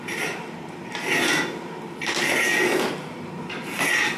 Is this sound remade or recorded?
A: recorded